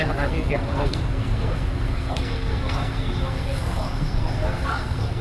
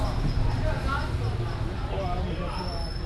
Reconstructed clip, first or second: first